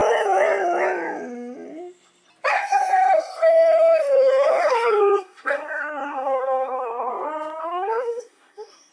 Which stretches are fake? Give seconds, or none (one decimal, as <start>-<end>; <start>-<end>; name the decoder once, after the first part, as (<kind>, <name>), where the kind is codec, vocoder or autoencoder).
2.5-7.1 (codec, SNAC); 7.6-8.9